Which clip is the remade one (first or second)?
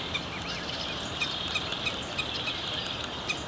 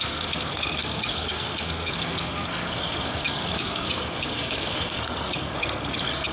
second